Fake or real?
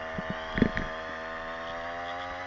real